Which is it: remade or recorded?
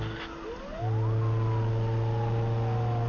recorded